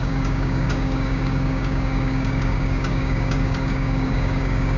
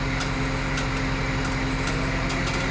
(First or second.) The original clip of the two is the second